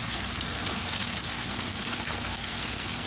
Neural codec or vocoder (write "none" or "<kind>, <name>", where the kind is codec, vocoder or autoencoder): codec, SNAC